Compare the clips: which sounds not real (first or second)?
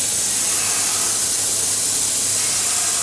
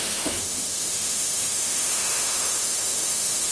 second